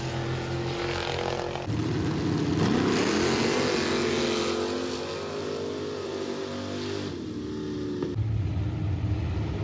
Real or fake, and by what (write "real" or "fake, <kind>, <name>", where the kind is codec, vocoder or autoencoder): real